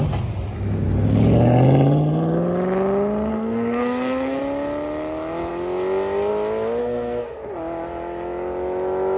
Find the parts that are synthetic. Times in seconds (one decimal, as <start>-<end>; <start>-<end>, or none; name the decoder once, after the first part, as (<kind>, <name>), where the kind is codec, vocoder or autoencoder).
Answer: 3.3-4.4 (codec, SNAC); 6.8-7.4